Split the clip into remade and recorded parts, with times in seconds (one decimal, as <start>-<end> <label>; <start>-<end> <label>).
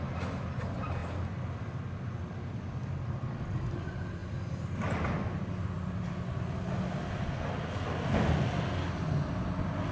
0.0-9.9 recorded